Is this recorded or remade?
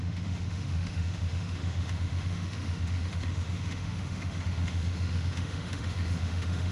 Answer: remade